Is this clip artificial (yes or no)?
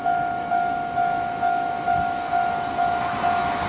yes